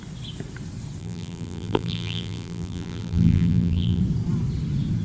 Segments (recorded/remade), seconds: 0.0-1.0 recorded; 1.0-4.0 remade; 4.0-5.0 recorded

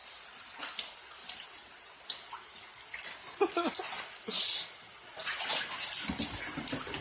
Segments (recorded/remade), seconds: 0.0-0.7 remade; 0.7-1.2 recorded; 1.2-1.9 remade; 1.9-5.2 recorded; 5.2-5.9 remade; 5.9-7.0 recorded

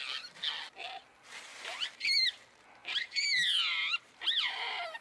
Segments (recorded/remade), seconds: 0.0-1.5 recorded; 1.5-2.4 remade; 2.4-2.8 recorded; 2.8-5.0 remade

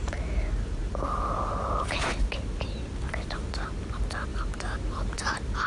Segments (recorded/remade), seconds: 0.0-0.9 remade; 0.9-4.3 recorded; 4.3-5.2 remade; 5.2-5.7 recorded